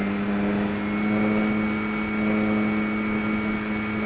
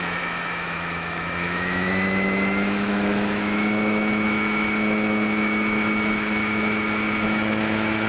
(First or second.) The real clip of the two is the first